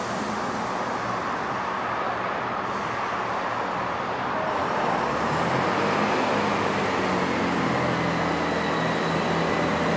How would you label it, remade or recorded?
recorded